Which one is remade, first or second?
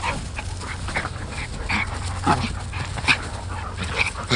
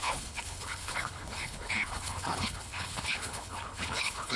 second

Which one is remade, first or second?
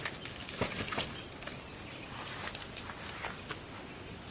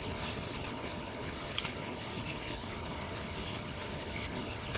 second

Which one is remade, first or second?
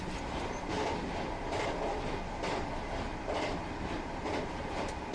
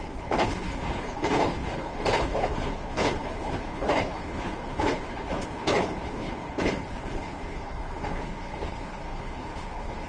second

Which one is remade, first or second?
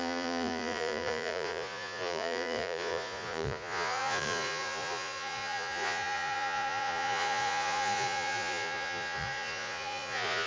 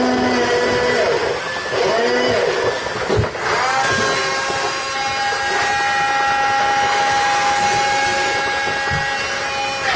first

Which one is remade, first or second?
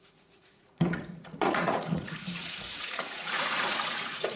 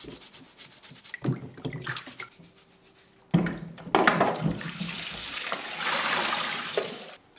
first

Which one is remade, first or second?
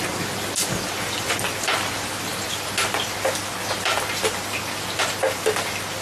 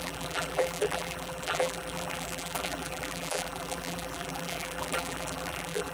second